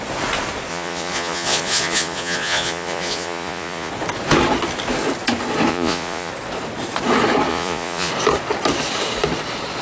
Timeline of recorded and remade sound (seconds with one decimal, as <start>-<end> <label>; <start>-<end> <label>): 0.0-0.7 recorded; 0.7-3.9 remade; 3.9-5.7 recorded; 5.7-6.3 remade; 6.3-7.5 recorded; 7.5-8.1 remade; 8.1-9.8 recorded